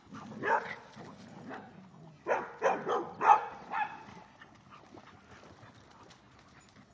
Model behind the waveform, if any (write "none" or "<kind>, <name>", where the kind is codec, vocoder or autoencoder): none